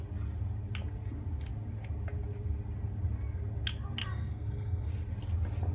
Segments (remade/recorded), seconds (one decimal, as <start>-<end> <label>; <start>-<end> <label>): 0.0-4.0 recorded; 4.0-4.9 remade; 4.9-5.7 recorded